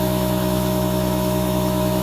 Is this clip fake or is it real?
fake